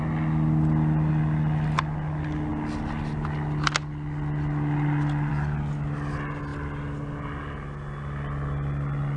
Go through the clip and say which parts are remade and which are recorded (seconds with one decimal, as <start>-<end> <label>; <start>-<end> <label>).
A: 0.0-9.2 recorded